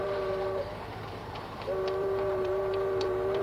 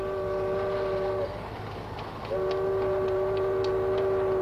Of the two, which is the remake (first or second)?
first